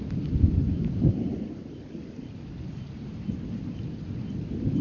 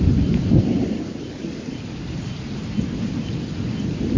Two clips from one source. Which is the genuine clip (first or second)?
second